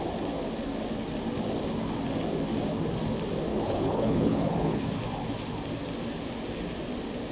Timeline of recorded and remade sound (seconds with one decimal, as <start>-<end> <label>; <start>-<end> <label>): 0.0-3.5 recorded; 3.5-4.8 remade; 4.8-7.3 recorded